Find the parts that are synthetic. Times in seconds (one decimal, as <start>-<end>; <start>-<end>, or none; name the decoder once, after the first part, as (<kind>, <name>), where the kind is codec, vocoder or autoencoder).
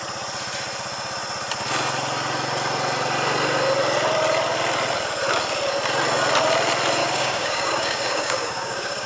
7.0-9.1 (codec, DAC)